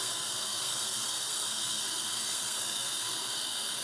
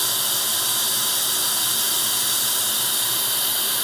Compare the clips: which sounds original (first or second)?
second